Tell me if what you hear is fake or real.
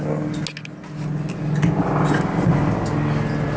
real